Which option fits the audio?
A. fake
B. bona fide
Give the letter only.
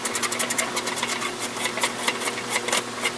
B